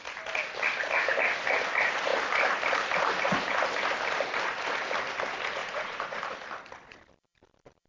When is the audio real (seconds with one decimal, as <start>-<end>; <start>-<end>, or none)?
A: 0.0-5.6; 6.2-7.9